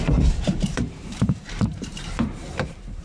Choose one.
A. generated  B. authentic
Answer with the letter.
A